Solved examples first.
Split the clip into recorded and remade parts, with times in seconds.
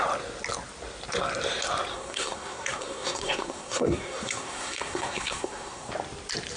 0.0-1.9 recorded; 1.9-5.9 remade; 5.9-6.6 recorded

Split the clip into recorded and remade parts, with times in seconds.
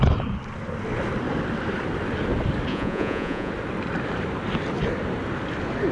0.0-2.7 recorded; 2.7-3.5 remade; 3.5-5.9 recorded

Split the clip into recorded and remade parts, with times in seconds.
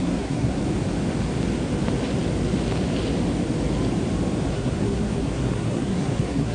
0.0-0.6 remade; 0.6-4.5 recorded; 4.5-6.5 remade